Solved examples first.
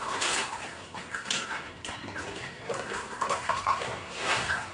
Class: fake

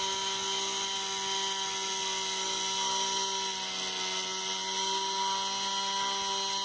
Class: real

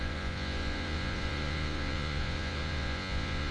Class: fake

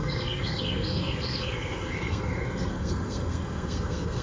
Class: fake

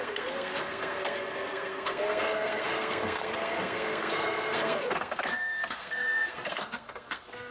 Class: fake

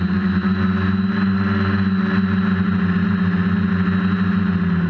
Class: real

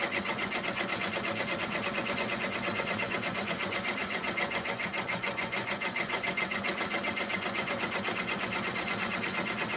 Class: fake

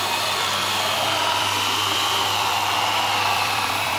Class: fake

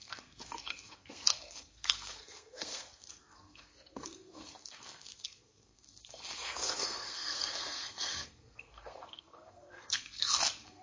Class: fake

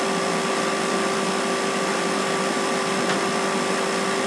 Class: real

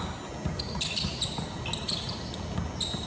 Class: real